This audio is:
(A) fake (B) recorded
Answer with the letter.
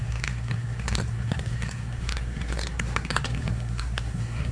A